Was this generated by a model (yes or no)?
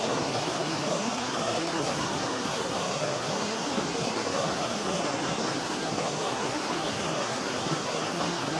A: yes